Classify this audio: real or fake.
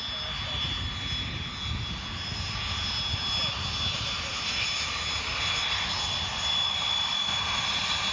real